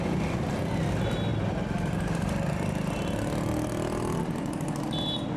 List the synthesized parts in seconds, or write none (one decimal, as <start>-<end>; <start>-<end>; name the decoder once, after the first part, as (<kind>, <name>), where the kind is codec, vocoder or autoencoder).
none